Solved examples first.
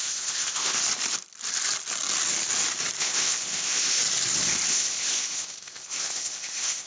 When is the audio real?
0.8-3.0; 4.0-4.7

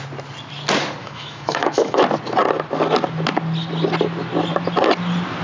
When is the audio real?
0.0-1.0; 2.0-5.4

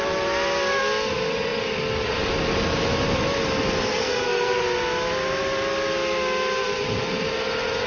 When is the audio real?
0.0-3.9; 4.6-7.9

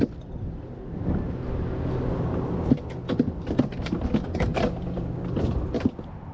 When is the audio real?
0.0-6.3

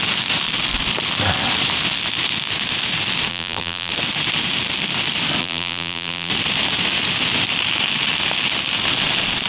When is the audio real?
0.0-3.3; 3.9-5.4; 6.3-9.5

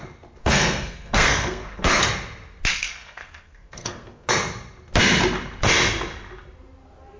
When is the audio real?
0.0-0.4; 2.0-2.7; 4.3-7.2